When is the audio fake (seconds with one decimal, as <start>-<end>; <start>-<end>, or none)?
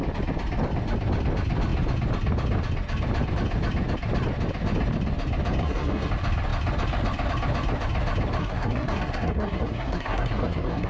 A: 5.6-6.1; 8.4-10.9